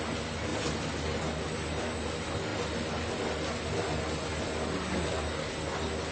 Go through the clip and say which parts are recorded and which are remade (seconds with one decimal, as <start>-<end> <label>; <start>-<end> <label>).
0.0-6.1 recorded